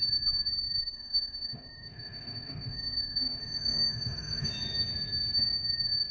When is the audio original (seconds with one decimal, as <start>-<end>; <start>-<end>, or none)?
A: 0.0-0.8; 4.5-6.1